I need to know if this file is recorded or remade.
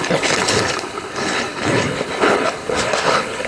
remade